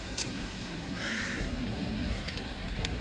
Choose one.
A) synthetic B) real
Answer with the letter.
A